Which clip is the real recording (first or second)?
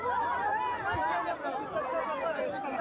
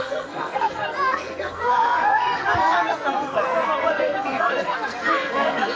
first